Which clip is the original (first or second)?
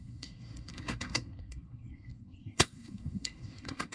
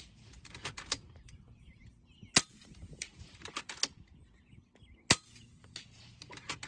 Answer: second